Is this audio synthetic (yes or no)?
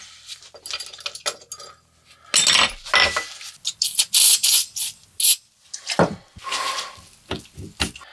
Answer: no